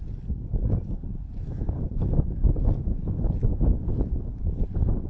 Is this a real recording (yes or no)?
yes